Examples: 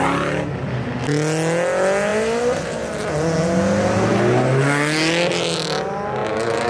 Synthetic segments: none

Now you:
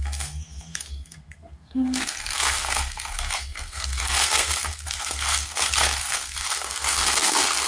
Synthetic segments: 0.0-7.7 (codec, SNAC)